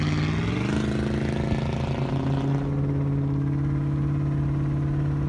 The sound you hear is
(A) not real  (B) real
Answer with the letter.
B